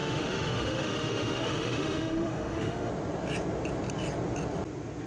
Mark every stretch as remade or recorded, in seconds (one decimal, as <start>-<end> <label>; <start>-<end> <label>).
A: 0.0-2.9 remade; 2.9-5.1 recorded